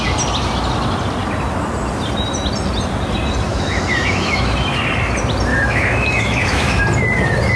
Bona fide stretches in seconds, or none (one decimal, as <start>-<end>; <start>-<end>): 0.0-3.5; 4.7-5.5; 6.8-7.6